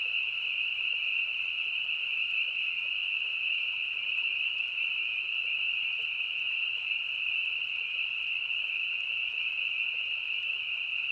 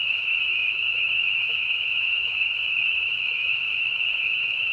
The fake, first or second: second